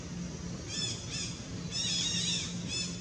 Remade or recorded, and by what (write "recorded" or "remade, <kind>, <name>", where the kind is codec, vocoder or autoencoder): recorded